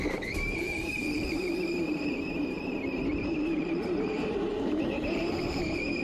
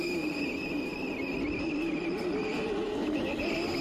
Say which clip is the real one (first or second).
second